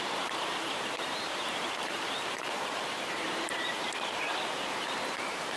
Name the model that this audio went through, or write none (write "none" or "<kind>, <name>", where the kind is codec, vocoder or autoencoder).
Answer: vocoder, BigVGAN v2